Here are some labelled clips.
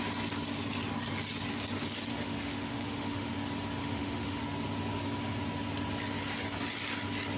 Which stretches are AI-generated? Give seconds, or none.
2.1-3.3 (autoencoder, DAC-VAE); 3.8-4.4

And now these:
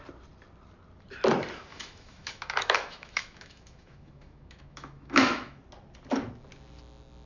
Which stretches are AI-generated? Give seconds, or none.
1.7-5.6 (autoencoder, DAC-VAE)

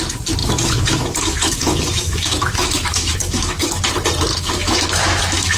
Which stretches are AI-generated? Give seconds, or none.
0.4-3.8 (autoencoder, DAC-VAE); 4.3-5.6

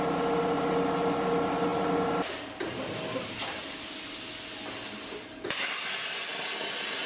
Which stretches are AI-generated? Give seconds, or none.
none